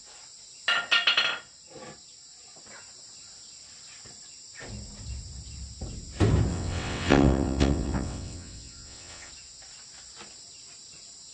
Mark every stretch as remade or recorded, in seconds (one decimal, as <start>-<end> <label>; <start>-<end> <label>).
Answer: 0.0-6.5 recorded; 6.5-9.3 remade; 9.3-11.3 recorded